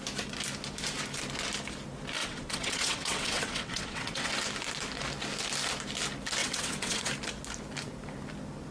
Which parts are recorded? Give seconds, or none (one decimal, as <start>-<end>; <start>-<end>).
0.0-2.2; 4.3-6.4; 7.1-8.7